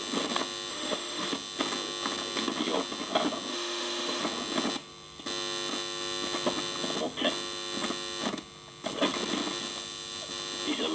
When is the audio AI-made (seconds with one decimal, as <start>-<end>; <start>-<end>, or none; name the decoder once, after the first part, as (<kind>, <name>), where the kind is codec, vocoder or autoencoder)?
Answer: 0.7-1.3 (autoencoder, DAC-VAE); 3.5-4.2